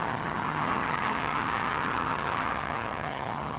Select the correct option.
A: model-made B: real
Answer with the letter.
A